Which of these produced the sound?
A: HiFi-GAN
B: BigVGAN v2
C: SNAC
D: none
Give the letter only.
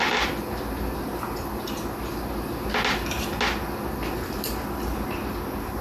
D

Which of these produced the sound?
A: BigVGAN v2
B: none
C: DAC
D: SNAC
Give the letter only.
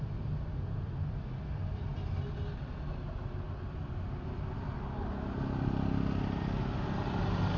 B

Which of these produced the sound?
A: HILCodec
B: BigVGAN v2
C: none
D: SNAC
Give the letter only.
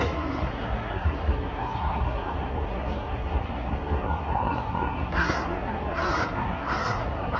D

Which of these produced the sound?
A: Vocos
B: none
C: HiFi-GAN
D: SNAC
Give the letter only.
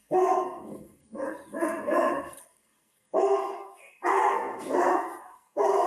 D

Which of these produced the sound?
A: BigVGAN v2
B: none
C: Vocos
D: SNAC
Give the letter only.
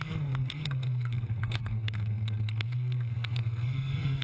D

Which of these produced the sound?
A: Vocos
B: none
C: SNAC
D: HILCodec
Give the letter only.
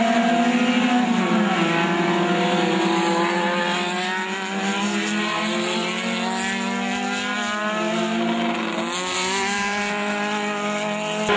B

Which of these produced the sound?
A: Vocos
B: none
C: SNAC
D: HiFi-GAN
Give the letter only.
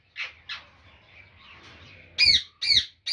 B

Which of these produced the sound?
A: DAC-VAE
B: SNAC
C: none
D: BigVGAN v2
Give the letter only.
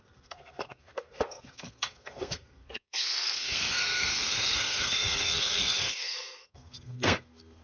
B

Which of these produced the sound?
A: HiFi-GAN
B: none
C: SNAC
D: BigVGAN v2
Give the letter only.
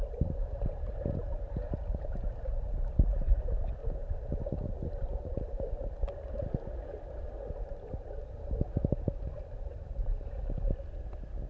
B